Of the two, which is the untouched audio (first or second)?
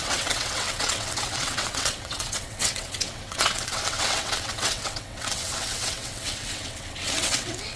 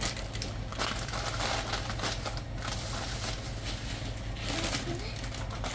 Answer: second